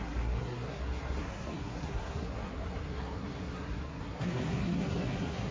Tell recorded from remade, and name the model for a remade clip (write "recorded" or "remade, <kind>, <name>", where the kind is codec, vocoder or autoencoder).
remade, codec, SNAC